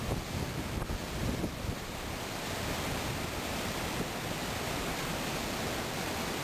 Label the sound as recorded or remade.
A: remade